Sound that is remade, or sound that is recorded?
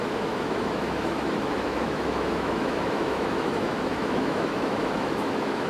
remade